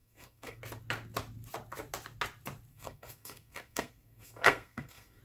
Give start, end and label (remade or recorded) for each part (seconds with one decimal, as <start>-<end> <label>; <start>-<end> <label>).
0.0-0.6 remade; 0.6-2.7 recorded; 2.7-5.2 remade